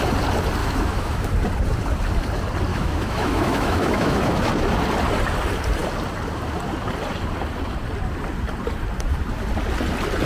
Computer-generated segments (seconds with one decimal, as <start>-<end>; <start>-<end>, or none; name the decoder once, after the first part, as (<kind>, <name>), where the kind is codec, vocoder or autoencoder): 0.6-1.3 (autoencoder, DAC-VAE); 2.7-4.5